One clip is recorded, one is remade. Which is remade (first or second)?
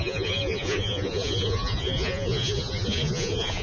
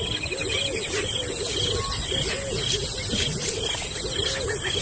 first